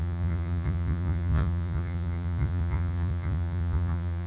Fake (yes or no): yes